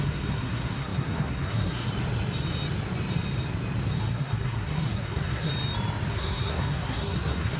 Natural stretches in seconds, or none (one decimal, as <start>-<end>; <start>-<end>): 1.9-4.0; 5.5-6.1